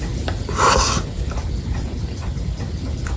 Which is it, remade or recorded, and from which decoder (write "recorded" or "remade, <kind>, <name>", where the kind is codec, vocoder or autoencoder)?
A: remade, vocoder, BigVGAN v2